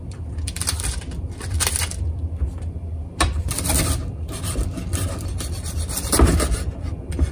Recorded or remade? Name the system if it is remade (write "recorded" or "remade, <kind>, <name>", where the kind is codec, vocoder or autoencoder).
remade, vocoder, BigVGAN v2